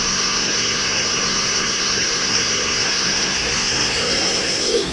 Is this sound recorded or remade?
remade